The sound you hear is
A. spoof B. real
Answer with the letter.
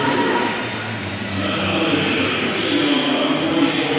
B